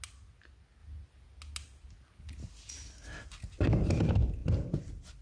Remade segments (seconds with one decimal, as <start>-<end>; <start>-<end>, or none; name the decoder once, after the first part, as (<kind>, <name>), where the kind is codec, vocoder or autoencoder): none